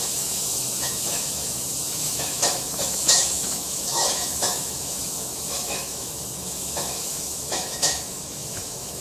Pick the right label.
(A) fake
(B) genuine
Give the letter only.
A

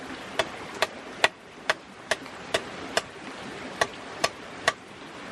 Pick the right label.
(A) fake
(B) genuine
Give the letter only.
B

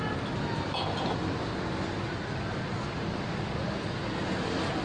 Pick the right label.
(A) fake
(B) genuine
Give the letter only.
B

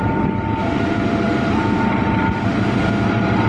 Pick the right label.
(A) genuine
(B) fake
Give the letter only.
B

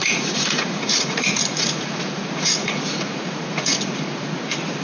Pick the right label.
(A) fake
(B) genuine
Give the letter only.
A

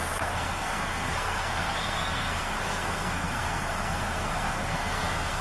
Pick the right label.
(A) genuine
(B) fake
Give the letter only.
B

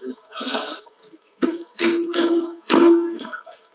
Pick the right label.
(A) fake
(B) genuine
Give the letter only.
A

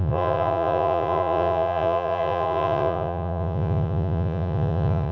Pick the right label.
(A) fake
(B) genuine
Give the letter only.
A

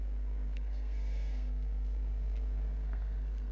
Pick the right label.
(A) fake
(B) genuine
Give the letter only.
A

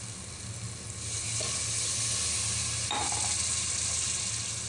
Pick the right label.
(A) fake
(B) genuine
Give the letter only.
B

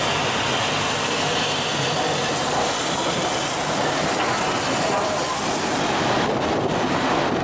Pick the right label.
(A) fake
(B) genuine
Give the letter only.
B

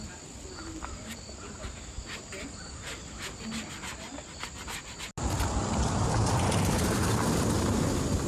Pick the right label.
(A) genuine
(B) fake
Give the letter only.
A